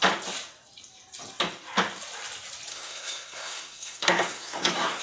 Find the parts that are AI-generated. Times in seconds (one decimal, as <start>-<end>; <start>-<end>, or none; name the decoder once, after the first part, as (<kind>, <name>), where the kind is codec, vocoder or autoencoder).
2.7-5.0 (codec, SNAC)